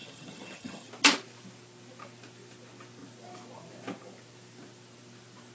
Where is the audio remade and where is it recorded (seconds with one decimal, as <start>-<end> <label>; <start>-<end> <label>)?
0.0-0.9 remade; 0.9-5.5 recorded